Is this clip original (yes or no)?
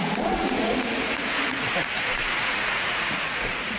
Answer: no